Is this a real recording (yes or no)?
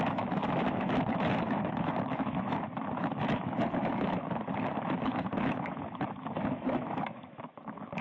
no